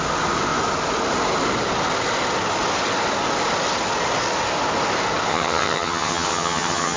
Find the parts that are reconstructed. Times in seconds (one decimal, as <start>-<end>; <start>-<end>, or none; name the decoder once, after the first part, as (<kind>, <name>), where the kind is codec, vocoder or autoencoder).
5.3-7.0 (vocoder, HiFi-GAN)